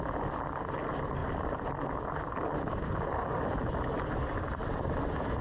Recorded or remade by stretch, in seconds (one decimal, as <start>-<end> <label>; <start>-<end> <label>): 0.0-5.4 recorded